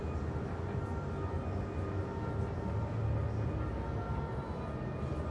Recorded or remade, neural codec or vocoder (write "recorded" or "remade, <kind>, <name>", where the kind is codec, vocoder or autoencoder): recorded